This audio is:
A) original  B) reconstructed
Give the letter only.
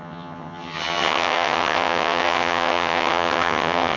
B